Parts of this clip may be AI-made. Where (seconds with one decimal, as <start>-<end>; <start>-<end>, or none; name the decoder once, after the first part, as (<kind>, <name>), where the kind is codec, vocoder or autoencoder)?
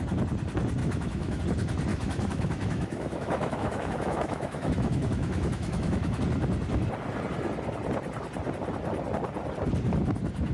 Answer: 0.8-1.4 (autoencoder, DAC-VAE); 1.9-6.2